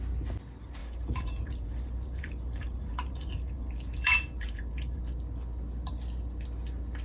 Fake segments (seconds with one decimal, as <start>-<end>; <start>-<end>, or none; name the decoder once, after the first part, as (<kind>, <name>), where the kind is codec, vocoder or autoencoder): 0.8-5.0 (vocoder, BigVGAN v2)